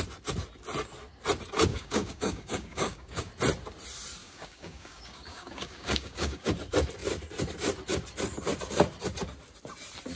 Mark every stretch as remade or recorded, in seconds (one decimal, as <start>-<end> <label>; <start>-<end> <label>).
0.0-1.7 recorded; 1.7-3.3 remade; 3.3-4.2 recorded; 4.2-6.5 remade; 6.5-10.2 recorded